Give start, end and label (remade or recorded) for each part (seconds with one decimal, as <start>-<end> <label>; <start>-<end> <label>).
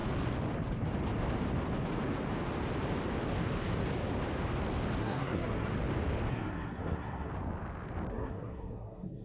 0.0-5.0 recorded; 5.0-5.7 remade; 5.7-6.3 recorded; 6.3-7.3 remade; 7.3-8.1 recorded; 8.1-9.2 remade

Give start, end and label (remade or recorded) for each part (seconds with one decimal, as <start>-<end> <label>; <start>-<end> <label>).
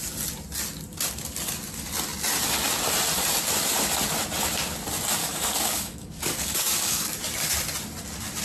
0.0-5.2 recorded; 5.2-7.1 remade; 7.1-8.4 recorded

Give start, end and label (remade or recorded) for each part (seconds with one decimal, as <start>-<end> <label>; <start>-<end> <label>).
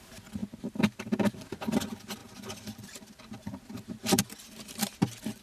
0.0-2.2 recorded; 2.2-3.7 remade; 3.7-5.4 recorded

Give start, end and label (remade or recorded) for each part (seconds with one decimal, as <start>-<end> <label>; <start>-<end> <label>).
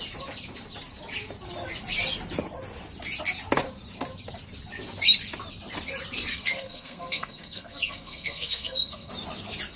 0.0-6.3 recorded; 6.3-9.1 remade; 9.1-9.8 recorded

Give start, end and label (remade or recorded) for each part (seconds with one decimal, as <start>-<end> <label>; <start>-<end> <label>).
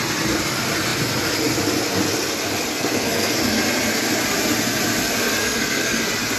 0.0-2.7 recorded; 2.7-3.4 remade; 3.4-5.4 recorded; 5.4-6.0 remade; 6.0-6.4 recorded